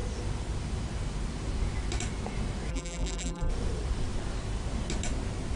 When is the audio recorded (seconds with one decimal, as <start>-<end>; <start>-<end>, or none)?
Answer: 0.0-2.7; 3.5-5.6